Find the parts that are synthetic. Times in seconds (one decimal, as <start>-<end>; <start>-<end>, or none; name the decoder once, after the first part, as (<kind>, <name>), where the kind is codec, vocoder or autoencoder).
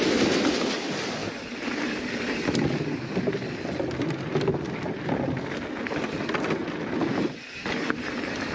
none